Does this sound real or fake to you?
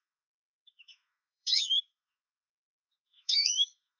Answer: fake